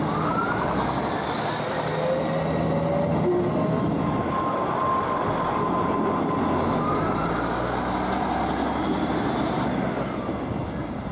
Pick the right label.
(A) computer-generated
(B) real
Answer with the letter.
B